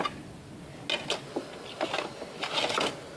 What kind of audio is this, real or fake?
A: real